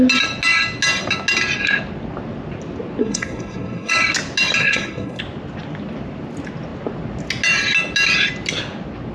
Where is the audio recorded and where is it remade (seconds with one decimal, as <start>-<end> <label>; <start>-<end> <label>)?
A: 0.0-3.0 recorded; 3.0-3.9 remade; 3.9-4.6 recorded; 4.6-5.2 remade; 5.2-9.1 recorded